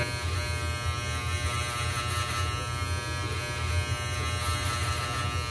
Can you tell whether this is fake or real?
real